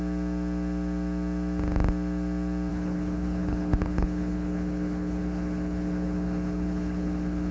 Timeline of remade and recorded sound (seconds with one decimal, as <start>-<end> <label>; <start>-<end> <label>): 0.0-2.7 recorded; 2.7-7.5 remade